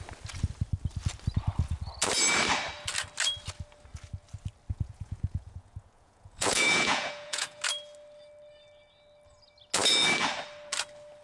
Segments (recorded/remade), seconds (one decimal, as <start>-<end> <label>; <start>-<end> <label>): 0.0-4.7 recorded; 4.7-7.6 remade; 7.6-11.2 recorded